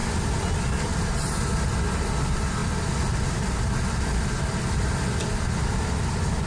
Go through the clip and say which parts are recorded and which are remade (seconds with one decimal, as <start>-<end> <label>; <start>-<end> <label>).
0.0-6.5 recorded